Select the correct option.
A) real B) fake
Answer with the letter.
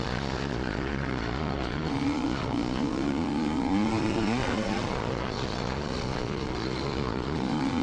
B